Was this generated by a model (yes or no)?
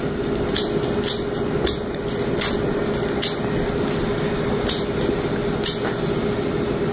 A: no